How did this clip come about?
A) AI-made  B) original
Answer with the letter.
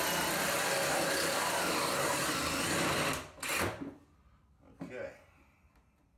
B